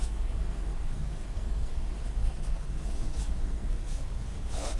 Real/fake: fake